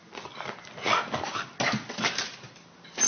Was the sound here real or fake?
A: real